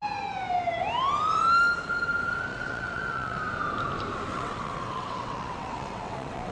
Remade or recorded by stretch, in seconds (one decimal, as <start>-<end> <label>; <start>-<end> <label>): 0.0-2.5 recorded; 2.5-3.4 remade; 3.4-4.3 recorded; 4.3-6.5 remade